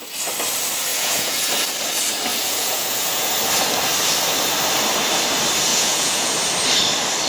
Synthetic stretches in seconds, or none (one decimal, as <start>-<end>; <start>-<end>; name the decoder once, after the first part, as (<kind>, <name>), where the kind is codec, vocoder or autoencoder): 0.9-1.5 (vocoder, Vocos); 2.3-3.3; 5.7-6.3